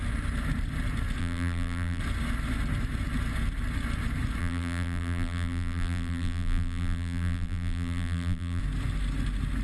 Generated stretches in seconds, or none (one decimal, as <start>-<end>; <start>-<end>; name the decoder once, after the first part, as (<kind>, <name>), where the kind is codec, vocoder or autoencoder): 1.2-2.0 (vocoder, BigVGAN v2); 4.4-8.6